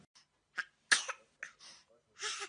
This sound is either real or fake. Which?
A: real